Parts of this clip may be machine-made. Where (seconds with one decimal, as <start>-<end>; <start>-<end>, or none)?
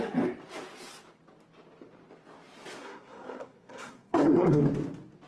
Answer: 2.8-4.6